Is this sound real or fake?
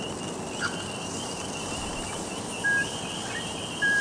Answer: real